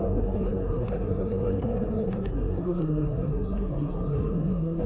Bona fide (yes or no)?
no